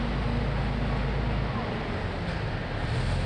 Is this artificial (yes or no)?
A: no